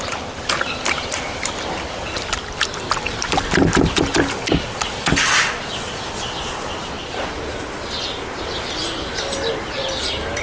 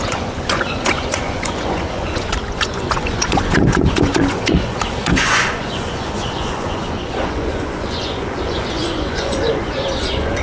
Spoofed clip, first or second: second